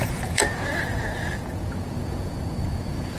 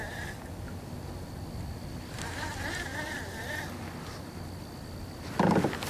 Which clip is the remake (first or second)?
first